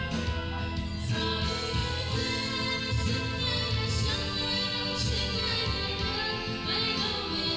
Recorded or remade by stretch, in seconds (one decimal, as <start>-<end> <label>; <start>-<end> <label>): 0.0-1.8 recorded; 1.8-2.9 remade; 2.9-7.6 recorded